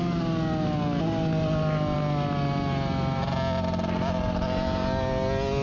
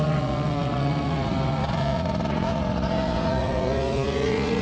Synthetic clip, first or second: second